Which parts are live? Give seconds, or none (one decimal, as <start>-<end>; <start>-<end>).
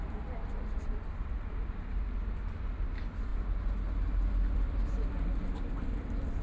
3.3-4.5